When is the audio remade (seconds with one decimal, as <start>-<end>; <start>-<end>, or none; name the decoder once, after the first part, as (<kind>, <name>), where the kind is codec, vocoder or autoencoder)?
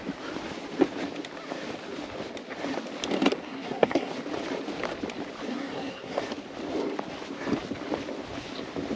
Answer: 3.4-4.1 (codec, SNAC); 5.5-6.2